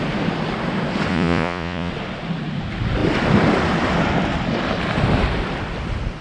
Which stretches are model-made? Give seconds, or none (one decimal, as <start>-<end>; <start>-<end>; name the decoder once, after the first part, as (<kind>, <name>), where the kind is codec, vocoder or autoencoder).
1.1-1.9 (vocoder, Vocos)